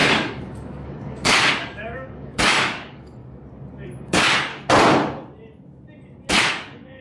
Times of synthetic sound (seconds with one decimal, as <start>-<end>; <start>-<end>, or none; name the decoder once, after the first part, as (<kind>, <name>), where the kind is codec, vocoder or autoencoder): 0.0-3.2 (codec, DAC); 4.0-4.5; 6.4-7.0